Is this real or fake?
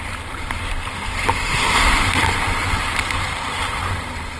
real